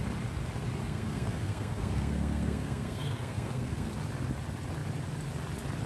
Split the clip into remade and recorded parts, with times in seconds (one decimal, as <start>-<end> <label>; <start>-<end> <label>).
0.0-0.8 recorded; 0.8-3.9 remade; 3.9-5.9 recorded